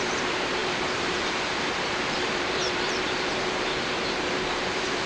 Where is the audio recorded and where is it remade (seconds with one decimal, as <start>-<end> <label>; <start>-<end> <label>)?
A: 0.0-5.1 remade